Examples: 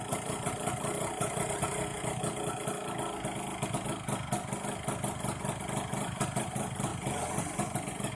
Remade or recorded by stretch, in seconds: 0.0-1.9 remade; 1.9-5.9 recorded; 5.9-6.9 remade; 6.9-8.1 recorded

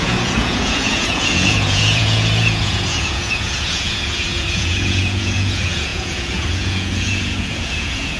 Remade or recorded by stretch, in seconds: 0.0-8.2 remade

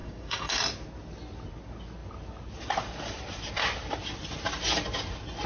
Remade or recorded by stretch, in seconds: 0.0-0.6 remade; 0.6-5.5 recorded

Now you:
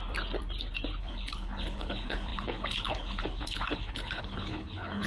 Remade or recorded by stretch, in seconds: 0.0-1.0 recorded; 1.0-5.1 remade

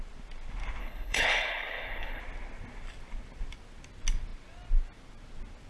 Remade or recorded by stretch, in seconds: 0.0-0.8 recorded; 0.8-2.2 remade; 2.2-5.7 recorded